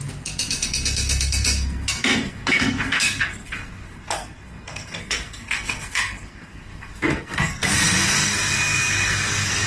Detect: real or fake fake